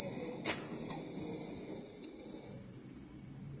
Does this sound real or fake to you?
real